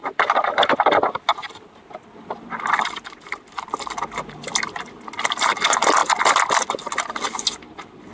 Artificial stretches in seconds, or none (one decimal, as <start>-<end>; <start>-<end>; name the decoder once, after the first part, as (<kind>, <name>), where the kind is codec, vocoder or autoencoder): 0.0-1.2 (vocoder, BigVGAN v2)